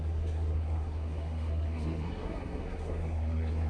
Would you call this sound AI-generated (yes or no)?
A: yes